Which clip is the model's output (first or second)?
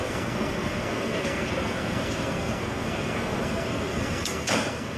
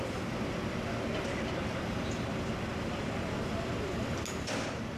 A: first